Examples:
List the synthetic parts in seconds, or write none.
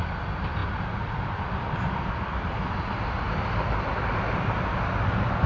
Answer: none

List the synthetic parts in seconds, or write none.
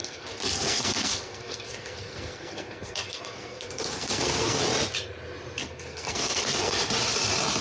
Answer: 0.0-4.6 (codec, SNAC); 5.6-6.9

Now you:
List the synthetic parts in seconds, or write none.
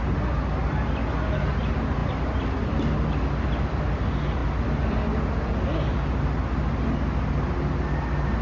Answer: none